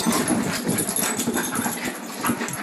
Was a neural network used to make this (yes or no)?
no